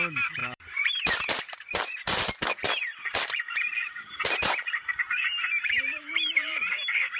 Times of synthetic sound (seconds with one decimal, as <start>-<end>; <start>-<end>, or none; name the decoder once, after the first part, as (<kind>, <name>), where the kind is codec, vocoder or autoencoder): 0.4-2.6 (vocoder, BigVGAN v2); 3.8-6.7

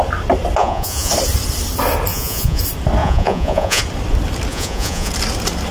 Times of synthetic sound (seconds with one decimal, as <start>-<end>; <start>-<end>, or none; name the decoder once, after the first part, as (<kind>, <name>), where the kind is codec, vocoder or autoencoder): 0.6-1.1 (vocoder, Vocos); 2.1-2.6; 3.0-3.8; 4.5-5.1

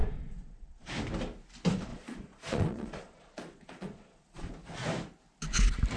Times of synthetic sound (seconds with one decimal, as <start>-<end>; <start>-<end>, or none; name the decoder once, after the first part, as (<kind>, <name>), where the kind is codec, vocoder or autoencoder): 0.0-0.9 (vocoder, Vocos); 1.9-4.5